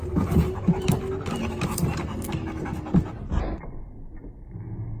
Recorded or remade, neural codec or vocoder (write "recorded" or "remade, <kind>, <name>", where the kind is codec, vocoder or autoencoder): recorded